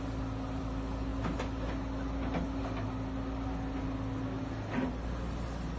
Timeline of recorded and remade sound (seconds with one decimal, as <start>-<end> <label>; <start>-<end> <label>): 0.0-5.8 recorded